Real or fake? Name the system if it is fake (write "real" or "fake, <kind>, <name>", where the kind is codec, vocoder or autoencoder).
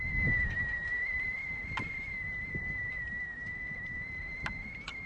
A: fake, vocoder, BigVGAN v2